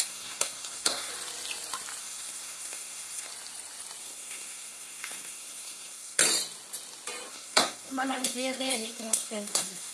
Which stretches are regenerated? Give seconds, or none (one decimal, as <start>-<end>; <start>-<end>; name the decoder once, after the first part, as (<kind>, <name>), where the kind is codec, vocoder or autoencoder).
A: 0.0-1.1 (codec, SNAC); 2.0-3.3; 4.0-6.2; 7.3-9.9